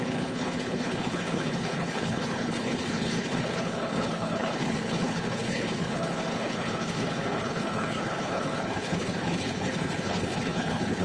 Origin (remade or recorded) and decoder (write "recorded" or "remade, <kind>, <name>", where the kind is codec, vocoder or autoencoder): remade, codec, HILCodec